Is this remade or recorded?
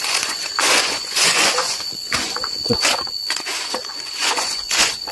remade